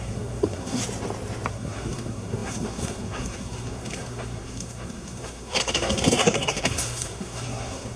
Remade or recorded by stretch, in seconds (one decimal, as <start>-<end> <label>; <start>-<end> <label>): 0.0-0.8 remade; 0.8-1.5 recorded; 1.5-8.0 remade